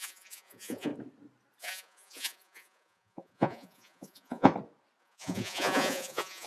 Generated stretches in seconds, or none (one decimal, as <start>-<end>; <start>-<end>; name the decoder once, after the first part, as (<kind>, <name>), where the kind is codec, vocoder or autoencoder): 0.0-0.9 (vocoder, Vocos); 1.6-4.5; 5.0-6.5